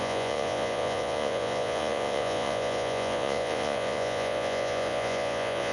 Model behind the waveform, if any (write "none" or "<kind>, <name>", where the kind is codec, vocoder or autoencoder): vocoder, Vocos